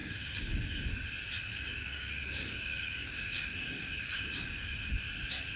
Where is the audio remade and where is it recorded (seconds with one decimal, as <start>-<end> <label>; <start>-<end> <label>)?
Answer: 0.0-0.6 remade; 0.6-1.5 recorded; 1.5-4.9 remade; 4.9-5.6 recorded